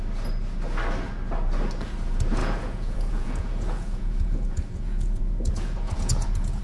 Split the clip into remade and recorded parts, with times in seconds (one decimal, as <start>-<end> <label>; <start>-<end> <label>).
0.0-2.4 recorded; 2.4-6.6 remade